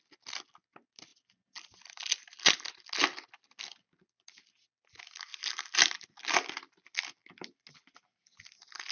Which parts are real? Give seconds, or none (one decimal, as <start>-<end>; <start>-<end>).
0.0-8.9